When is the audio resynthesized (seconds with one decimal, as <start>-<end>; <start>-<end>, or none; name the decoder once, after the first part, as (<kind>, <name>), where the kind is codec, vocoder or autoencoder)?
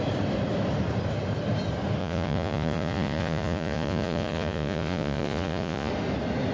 2.0-5.9 (vocoder, Vocos)